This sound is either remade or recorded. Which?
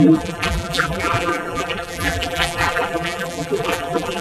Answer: remade